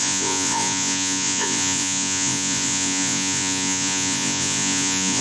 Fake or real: fake